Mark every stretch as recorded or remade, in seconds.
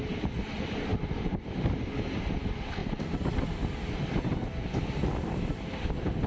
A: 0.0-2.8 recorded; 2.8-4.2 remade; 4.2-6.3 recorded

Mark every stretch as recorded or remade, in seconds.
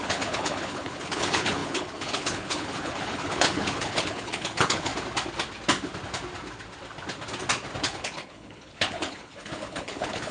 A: 0.0-4.9 remade; 4.9-7.8 recorded; 7.8-10.3 remade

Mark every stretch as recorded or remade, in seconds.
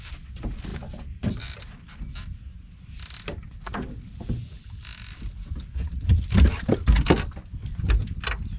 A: 0.0-8.6 recorded